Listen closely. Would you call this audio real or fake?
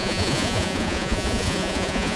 fake